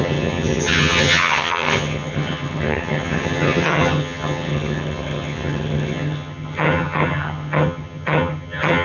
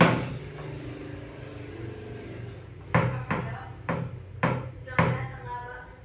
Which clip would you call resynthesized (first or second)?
first